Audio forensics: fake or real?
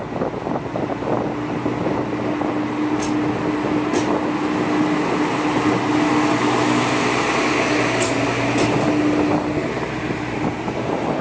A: real